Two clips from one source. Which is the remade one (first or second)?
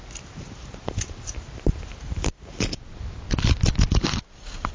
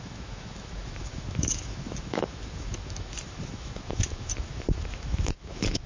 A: second